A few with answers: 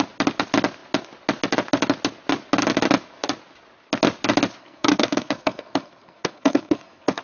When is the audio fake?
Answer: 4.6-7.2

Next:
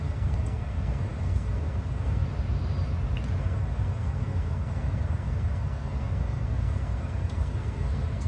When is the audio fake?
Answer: 0.0-2.2; 3.4-8.3

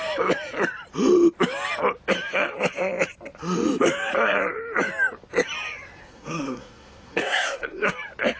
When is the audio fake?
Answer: 6.0-7.9

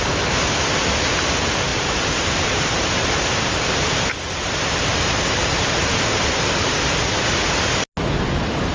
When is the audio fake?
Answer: 1.7-5.8

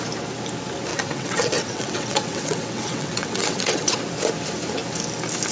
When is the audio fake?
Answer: 0.9-4.0

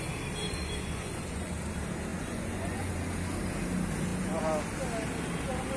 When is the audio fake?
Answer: 0.4-1.5; 2.1-2.9